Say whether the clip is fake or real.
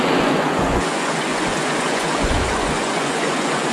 fake